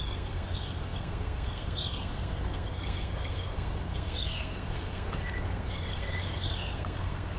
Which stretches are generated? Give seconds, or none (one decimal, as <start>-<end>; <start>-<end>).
0.0-7.4